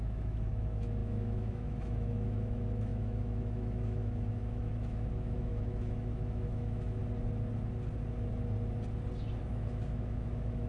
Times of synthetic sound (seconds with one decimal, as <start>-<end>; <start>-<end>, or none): 0.0-7.0; 9.4-10.7